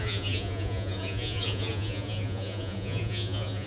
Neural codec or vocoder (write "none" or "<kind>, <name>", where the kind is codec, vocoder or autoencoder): vocoder, Vocos